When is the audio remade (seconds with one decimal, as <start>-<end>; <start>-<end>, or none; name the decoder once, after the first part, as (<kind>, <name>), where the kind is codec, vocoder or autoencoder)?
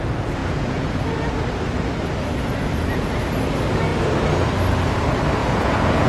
0.4-1.0 (vocoder, Vocos); 5.4-6.1